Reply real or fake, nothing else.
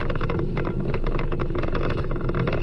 real